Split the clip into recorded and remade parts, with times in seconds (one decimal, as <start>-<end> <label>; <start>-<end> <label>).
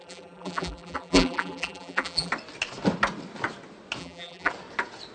0.0-2.3 remade; 2.3-4.0 recorded; 4.0-4.5 remade; 4.5-5.1 recorded